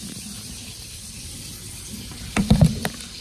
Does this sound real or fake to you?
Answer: fake